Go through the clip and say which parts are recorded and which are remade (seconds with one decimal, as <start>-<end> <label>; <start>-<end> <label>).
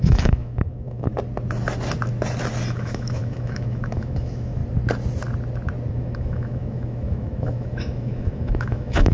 0.0-1.1 remade; 1.1-2.7 recorded; 2.7-4.6 remade; 4.6-5.9 recorded; 5.9-9.1 remade